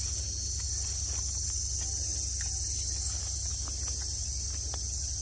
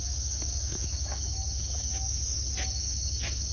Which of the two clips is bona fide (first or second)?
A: first